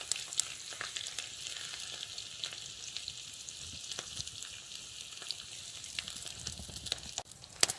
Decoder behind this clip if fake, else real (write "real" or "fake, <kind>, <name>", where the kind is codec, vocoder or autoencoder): real